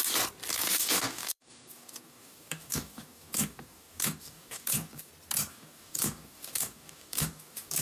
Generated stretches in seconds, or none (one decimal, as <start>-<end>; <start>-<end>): 0.5-5.1; 5.5-7.8